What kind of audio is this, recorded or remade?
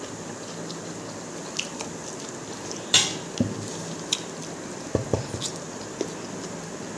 recorded